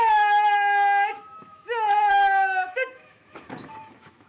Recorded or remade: remade